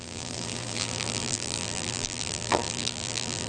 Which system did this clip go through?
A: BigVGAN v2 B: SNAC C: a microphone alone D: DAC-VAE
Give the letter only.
A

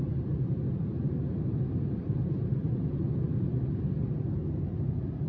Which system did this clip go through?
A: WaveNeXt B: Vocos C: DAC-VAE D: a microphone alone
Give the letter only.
D